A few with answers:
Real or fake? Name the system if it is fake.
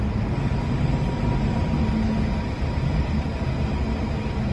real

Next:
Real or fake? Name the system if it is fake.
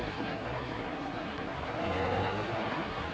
fake, codec, SNAC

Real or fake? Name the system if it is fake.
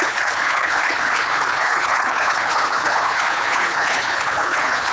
fake, codec, HILCodec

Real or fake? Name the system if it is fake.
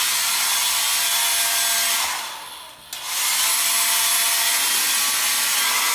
real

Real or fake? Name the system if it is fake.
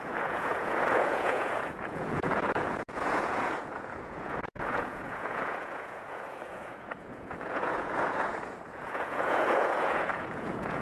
fake, vocoder, Vocos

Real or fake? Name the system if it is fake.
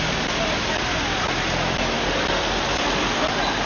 real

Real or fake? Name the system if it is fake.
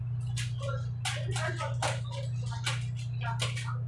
real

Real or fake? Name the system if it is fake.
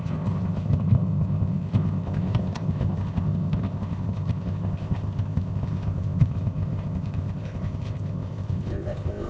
fake, codec, ZipCodec